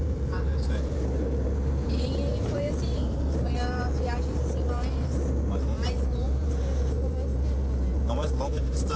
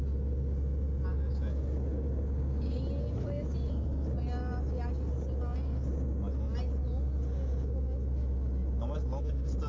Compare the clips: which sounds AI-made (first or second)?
first